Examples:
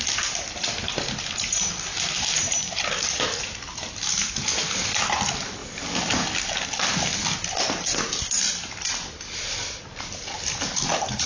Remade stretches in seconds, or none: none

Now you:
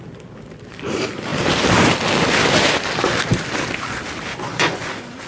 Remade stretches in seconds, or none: 4.3-5.3 (vocoder, Vocos)

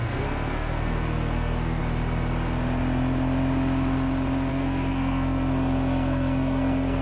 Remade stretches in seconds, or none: 0.0-1.8 (codec, SNAC); 4.5-7.0

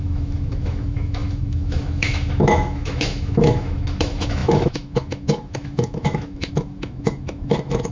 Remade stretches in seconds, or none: 0.0-7.9 (autoencoder, DAC-VAE)

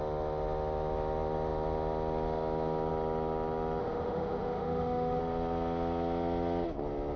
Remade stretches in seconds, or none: 3.8-5.2 (autoencoder, DAC-VAE)

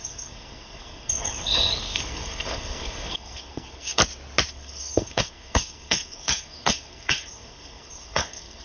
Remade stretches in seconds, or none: 0.0-4.0 (codec, SNAC); 4.5-8.6